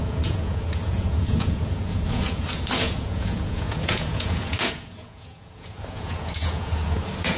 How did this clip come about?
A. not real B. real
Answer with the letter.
A